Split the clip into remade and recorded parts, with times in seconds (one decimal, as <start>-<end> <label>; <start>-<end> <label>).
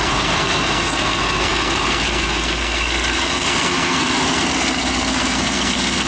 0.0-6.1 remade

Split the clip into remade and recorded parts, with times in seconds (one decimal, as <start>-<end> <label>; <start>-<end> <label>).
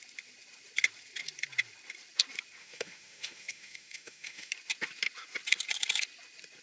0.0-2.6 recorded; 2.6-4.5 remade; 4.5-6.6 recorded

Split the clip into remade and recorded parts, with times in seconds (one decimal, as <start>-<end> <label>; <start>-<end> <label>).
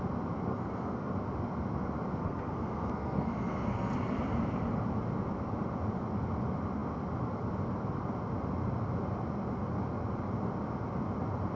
0.0-0.5 recorded; 0.5-1.1 remade; 1.1-2.2 recorded; 2.2-3.9 remade; 3.9-11.6 recorded